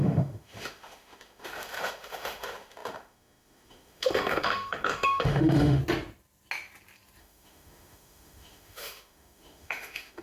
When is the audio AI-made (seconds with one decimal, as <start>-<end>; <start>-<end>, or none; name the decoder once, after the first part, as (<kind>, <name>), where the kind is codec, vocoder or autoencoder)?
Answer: 0.0-5.8 (autoencoder, DAC-VAE); 7.2-10.2